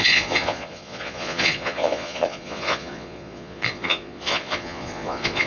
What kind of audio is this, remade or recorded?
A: remade